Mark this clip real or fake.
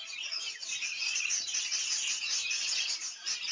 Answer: real